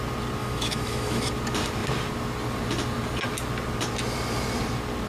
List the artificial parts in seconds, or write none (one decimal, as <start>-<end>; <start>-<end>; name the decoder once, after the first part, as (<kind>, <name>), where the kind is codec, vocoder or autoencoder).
0.4-1.3 (autoencoder, DAC-VAE)